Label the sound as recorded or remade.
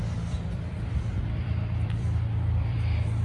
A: remade